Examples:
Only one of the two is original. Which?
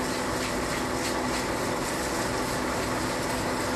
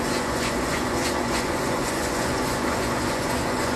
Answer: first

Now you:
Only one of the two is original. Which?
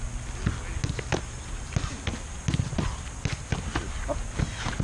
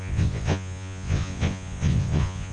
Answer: first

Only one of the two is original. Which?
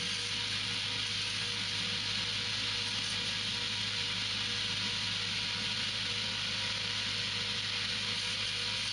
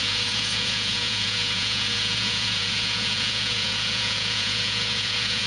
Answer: first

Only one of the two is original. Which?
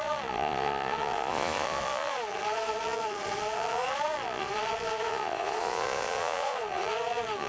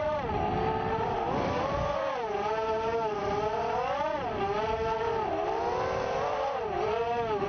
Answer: second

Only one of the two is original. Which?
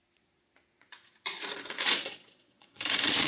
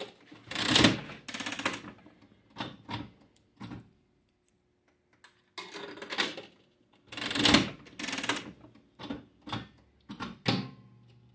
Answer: second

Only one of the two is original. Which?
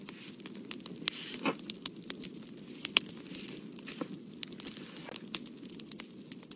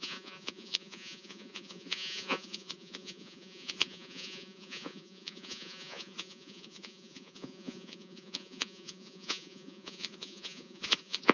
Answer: first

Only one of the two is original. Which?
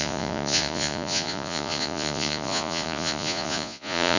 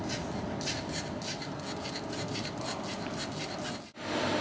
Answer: second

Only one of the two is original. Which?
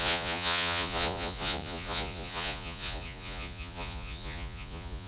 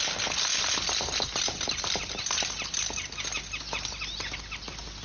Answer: second